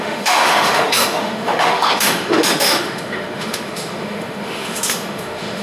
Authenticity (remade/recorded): remade